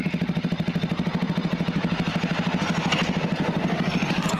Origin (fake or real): real